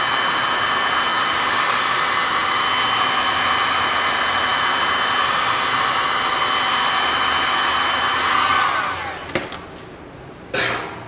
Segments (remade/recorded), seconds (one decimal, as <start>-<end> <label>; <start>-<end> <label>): 0.0-1.1 recorded; 1.1-1.8 remade; 1.8-11.1 recorded